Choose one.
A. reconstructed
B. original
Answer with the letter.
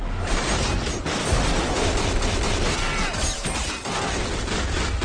B